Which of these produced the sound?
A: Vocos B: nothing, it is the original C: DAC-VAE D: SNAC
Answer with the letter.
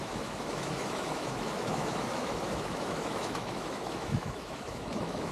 C